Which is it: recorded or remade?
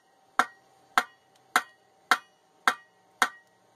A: recorded